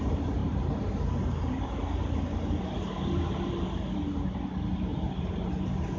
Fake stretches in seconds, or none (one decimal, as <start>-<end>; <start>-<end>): 4.9-5.5